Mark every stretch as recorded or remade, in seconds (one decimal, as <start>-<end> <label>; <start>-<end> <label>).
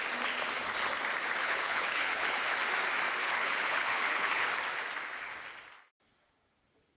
0.0-1.4 recorded; 1.4-2.4 remade; 2.4-3.2 recorded; 3.2-4.5 remade; 4.5-7.0 recorded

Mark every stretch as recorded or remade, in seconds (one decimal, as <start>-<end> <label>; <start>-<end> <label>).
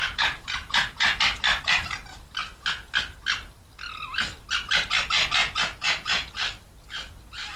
0.0-1.2 remade; 1.2-2.4 recorded; 2.4-2.9 remade; 2.9-5.4 recorded; 5.4-6.3 remade; 6.3-7.6 recorded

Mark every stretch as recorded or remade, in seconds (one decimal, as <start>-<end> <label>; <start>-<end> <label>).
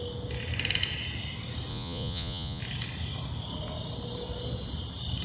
0.0-1.7 recorded; 1.7-2.6 remade; 2.6-5.2 recorded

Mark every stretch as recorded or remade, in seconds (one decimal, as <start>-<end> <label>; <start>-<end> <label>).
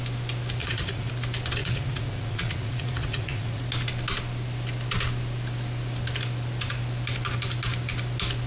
0.0-0.6 recorded; 0.6-1.1 remade; 1.1-1.6 recorded; 1.6-3.6 remade; 3.6-8.5 recorded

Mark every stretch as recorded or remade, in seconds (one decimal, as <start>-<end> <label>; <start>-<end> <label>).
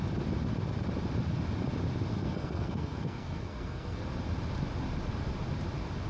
0.0-2.1 recorded; 2.1-4.0 remade; 4.0-6.1 recorded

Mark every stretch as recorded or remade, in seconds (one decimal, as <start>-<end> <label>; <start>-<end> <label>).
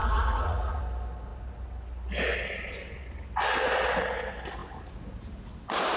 0.0-0.8 remade; 0.8-6.0 recorded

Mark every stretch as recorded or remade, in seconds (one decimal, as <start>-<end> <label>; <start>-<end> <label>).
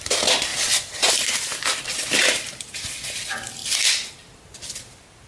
0.0-3.6 remade; 3.6-4.1 recorded; 4.1-5.3 remade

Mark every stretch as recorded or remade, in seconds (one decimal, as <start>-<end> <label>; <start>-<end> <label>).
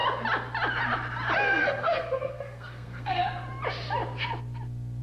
0.0-1.6 recorded; 1.6-3.2 remade; 3.2-5.0 recorded